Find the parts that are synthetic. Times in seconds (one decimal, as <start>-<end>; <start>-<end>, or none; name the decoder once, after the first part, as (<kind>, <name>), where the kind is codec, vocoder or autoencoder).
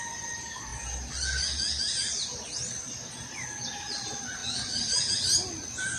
none